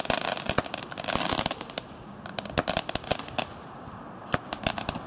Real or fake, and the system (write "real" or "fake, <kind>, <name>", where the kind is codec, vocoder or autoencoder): real